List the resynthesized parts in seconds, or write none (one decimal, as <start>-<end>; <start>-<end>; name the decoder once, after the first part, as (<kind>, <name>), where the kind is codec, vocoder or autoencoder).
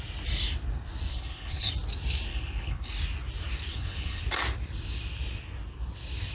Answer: 1.1-1.7 (codec, HILCodec); 2.3-2.9; 3.7-4.2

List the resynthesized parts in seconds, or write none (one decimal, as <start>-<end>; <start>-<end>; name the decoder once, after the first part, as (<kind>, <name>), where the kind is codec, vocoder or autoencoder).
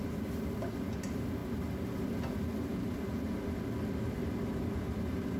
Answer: none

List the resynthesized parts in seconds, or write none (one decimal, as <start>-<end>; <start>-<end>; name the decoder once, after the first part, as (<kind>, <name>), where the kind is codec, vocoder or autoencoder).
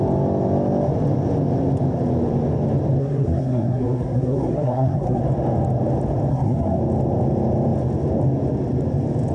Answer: 3.0-5.2 (codec, SNAC); 6.3-6.8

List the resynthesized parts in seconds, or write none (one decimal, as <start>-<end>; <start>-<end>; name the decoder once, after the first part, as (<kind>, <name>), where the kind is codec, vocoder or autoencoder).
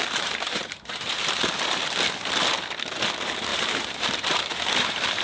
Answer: 0.0-1.3 (vocoder, BigVGAN v2); 3.5-5.2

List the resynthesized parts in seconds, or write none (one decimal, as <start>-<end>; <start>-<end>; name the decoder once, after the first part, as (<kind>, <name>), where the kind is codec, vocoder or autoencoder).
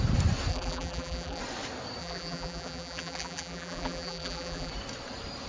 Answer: 0.5-1.4 (vocoder, BigVGAN v2); 2.0-4.7